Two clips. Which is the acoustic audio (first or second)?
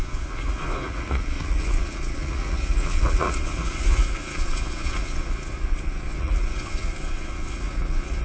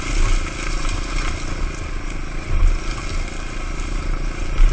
second